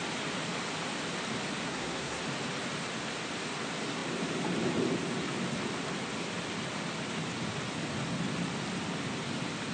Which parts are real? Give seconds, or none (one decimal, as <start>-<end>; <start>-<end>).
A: 0.0-1.6; 2.2-9.7

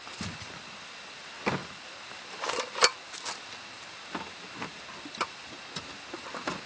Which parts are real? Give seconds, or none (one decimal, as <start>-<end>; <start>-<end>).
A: 0.0-6.7

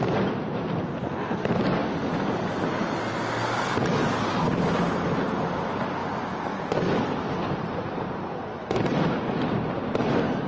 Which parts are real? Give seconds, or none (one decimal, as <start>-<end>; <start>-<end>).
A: 0.0-10.5

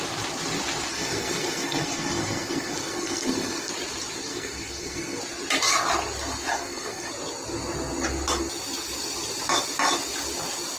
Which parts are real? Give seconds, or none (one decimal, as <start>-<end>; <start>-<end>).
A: 0.0-0.9; 3.7-4.3; 5.2-6.5; 7.1-10.8

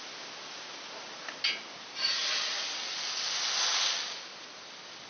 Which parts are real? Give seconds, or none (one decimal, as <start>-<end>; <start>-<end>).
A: 0.0-5.1

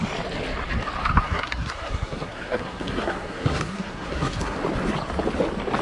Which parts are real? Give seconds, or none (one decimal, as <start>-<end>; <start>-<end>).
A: 0.0-1.1; 4.6-5.8

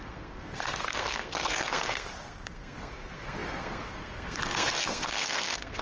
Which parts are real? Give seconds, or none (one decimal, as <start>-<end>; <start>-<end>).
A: none

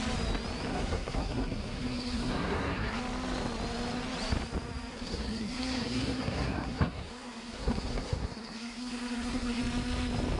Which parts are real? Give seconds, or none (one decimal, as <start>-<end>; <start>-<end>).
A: 0.0-0.7; 3.0-4.9; 9.6-10.4